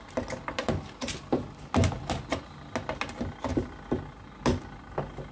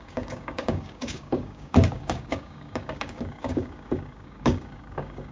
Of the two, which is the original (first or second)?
first